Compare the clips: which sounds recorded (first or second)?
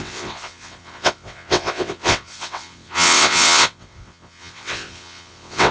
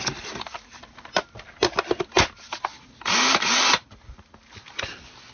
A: second